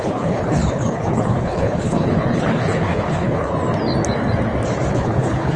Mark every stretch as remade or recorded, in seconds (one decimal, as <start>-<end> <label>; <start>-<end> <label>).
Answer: 0.0-3.5 remade; 3.5-4.9 recorded; 4.9-5.6 remade